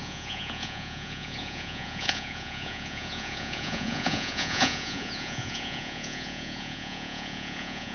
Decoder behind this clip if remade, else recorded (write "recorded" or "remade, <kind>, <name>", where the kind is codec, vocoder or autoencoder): remade, vocoder, Vocos